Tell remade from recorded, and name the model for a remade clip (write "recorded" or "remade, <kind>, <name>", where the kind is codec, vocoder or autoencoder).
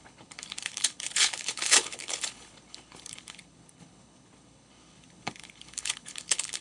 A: remade, codec, HILCodec